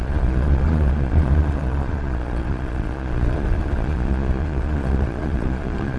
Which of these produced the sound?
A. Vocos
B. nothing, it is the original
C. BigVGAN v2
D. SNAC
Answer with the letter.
A